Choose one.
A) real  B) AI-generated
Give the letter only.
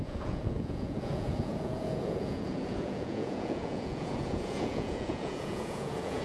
B